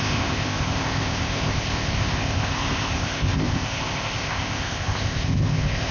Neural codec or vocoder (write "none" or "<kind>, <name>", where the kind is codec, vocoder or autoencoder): codec, ZipCodec